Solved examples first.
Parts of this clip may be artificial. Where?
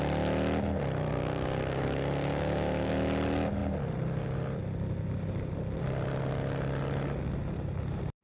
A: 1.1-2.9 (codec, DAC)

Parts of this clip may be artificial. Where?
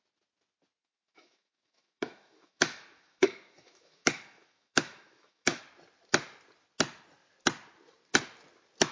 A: 0.8-5.6 (autoencoder, DAC-VAE)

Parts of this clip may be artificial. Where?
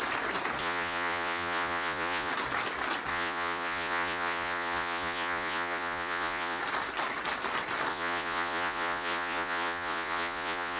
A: 0.6-2.3 (vocoder, Vocos); 3.1-6.6; 7.9-10.8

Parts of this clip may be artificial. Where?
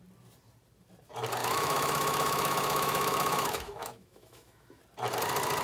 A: 1.4-4.8 (autoencoder, DAC-VAE)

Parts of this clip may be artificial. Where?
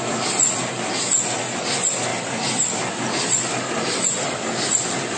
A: none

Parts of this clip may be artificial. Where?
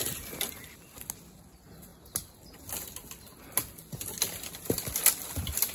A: none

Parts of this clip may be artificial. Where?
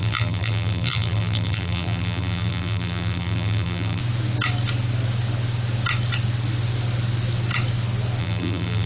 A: 0.0-4.0 (vocoder, BigVGAN v2); 8.2-8.9